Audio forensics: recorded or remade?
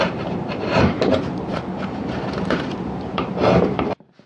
remade